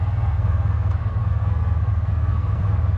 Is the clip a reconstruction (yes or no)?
yes